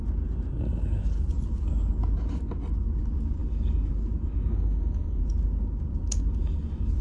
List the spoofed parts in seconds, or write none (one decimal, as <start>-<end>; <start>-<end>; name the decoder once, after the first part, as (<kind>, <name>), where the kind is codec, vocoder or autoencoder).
4.5-5.2 (codec, SNAC)